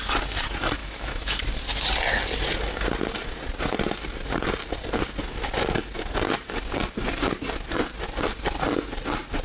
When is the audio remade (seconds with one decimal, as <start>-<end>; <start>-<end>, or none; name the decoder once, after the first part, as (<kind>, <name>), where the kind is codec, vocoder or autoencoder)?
0.8-1.4 (autoencoder, DAC-VAE)